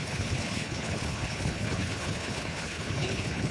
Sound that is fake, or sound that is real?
fake